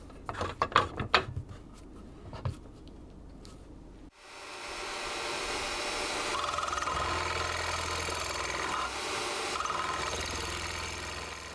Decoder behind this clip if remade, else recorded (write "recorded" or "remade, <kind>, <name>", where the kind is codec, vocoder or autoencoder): recorded